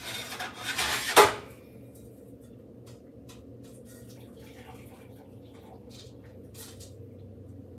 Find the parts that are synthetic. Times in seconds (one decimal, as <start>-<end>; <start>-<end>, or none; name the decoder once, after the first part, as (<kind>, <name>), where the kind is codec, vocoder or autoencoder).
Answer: 0.9-1.6 (autoencoder, DAC-VAE)